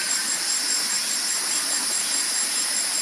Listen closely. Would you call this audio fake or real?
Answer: real